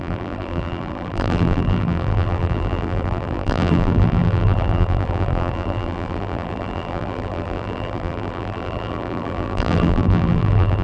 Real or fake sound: fake